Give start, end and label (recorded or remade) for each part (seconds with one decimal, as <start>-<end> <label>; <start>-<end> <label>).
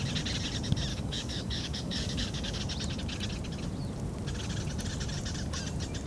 0.0-0.9 recorded; 0.9-2.6 remade; 2.6-6.1 recorded